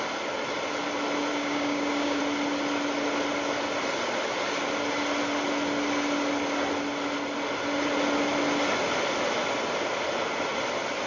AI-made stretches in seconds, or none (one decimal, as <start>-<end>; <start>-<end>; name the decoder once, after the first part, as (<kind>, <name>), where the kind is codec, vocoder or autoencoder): 1.3-2.2 (codec, DAC)